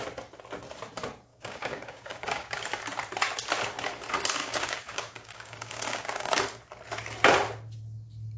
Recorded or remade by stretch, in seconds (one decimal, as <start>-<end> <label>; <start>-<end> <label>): 0.0-1.3 recorded; 1.3-2.6 remade; 2.6-4.4 recorded; 4.4-6.4 remade; 6.4-8.4 recorded